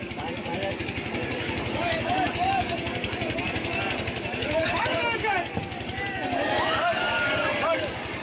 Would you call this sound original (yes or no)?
no